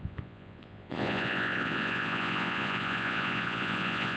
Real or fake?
fake